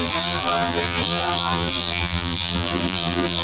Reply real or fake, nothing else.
fake